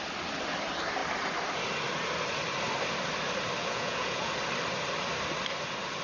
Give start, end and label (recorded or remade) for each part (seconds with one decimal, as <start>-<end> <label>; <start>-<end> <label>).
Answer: 0.0-3.6 recorded; 3.6-4.3 remade; 4.3-6.0 recorded